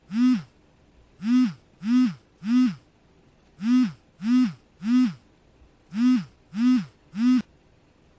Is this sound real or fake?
real